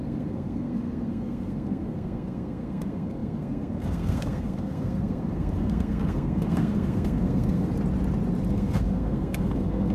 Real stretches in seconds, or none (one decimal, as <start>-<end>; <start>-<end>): 7.7-8.5